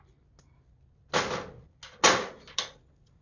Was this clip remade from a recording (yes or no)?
no